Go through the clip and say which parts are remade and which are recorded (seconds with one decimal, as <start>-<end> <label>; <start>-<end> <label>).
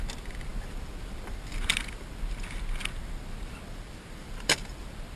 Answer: 0.0-5.2 recorded